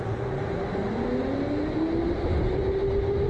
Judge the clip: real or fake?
real